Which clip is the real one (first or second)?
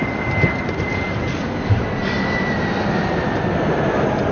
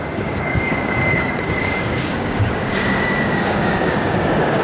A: first